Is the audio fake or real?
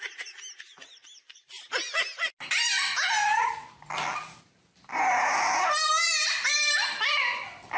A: real